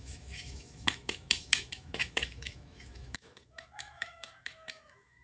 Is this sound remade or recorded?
remade